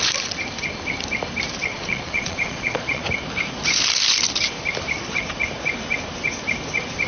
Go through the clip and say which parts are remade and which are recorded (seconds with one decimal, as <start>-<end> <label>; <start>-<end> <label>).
0.0-1.7 recorded; 1.7-3.0 remade; 3.0-7.1 recorded